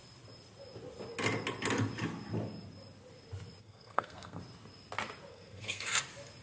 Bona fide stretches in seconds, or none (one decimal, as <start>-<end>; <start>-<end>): 0.0-3.6; 4.4-5.3; 6.0-6.4